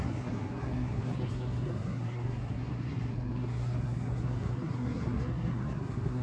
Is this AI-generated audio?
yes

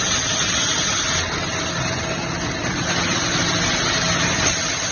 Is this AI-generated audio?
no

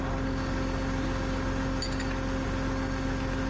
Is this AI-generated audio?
no